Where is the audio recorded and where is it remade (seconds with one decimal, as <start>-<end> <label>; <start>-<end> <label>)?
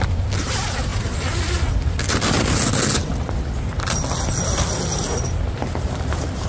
0.0-6.5 recorded